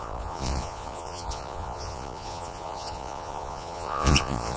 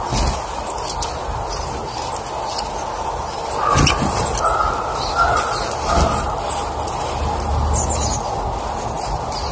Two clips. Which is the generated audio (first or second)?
first